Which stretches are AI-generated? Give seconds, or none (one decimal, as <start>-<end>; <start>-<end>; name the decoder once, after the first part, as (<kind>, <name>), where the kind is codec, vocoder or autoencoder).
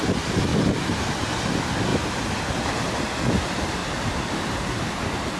0.5-1.3 (vocoder, BigVGAN v2); 1.9-3.0; 3.8-4.9